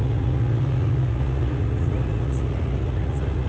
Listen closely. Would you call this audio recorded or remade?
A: remade